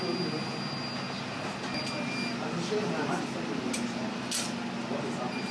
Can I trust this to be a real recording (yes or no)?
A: yes